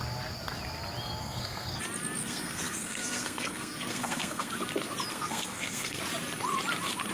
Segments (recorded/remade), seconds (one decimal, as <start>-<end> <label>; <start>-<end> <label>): 0.0-1.2 recorded; 1.2-1.8 remade; 1.8-2.2 recorded; 2.2-4.5 remade; 4.5-5.1 recorded; 5.1-6.0 remade; 6.0-7.1 recorded